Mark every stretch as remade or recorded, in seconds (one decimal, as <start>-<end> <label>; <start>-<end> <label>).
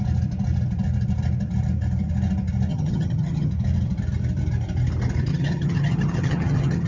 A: 0.0-2.7 recorded; 2.7-3.5 remade; 3.5-5.3 recorded; 5.3-6.9 remade